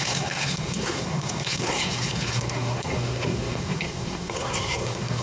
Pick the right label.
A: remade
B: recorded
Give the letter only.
A